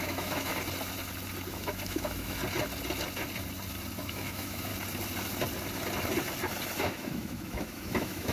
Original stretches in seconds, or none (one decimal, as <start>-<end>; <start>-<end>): 0.5-1.5; 2.4-4.0; 4.7-6.8

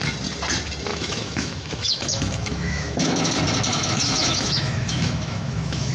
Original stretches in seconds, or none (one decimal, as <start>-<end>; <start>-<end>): 0.0-0.9; 3.3-3.7

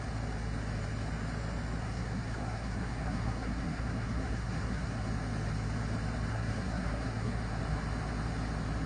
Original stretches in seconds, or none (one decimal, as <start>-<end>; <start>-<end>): 0.0-1.8; 5.1-6.3; 7.6-8.9

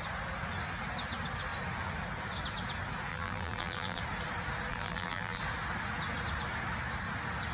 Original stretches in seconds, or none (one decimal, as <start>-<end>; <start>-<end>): 0.0-3.1; 4.0-4.7; 5.4-7.5